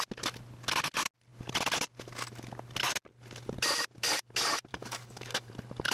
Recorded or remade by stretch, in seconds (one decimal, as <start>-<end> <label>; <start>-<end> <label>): 0.0-4.7 recorded; 4.7-5.5 remade; 5.5-5.9 recorded